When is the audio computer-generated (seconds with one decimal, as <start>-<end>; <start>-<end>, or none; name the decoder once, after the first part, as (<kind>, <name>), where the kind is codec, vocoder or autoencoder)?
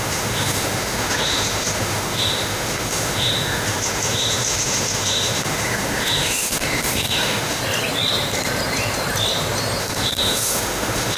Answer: 0.0-7.6 (autoencoder, DAC-VAE); 9.8-11.2